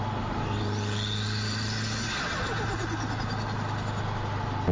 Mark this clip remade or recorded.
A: recorded